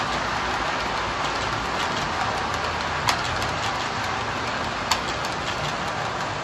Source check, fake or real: real